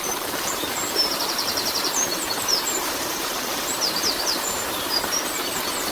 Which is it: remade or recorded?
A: remade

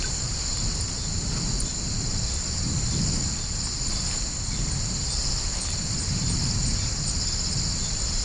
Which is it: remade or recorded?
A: remade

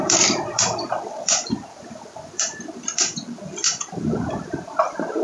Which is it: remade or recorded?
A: remade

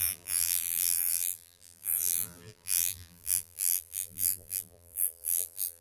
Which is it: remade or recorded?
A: remade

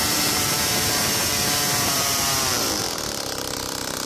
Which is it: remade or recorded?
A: remade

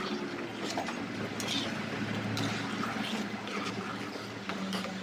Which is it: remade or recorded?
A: recorded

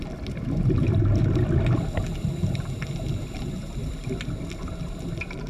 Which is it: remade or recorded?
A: recorded